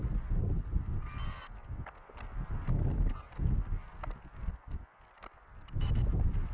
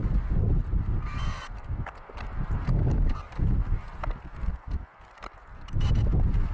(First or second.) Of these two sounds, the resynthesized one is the second